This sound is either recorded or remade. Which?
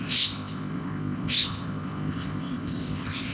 remade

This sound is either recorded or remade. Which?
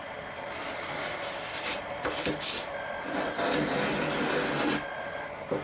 recorded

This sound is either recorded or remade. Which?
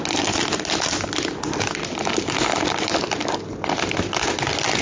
recorded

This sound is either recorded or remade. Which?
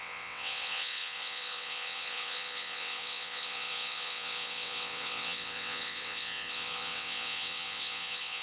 remade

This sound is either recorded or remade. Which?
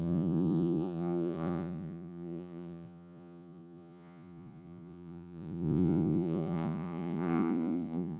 remade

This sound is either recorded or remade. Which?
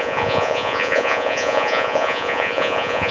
remade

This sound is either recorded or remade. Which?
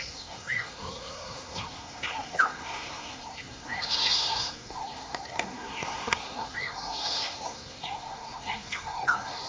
remade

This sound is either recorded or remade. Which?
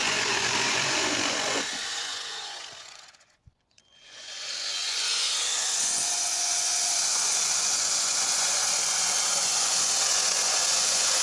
remade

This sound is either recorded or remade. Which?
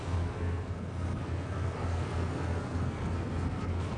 remade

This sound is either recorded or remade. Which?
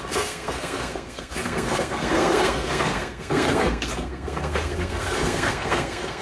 remade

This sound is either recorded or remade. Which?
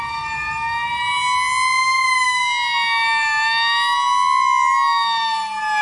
recorded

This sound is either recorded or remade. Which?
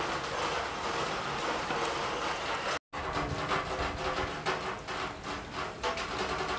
recorded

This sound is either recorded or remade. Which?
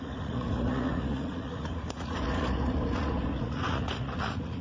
remade